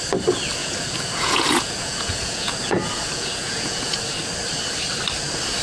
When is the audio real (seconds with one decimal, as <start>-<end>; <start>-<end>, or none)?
0.0-0.6; 4.0-5.6